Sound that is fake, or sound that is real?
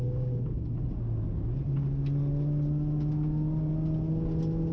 real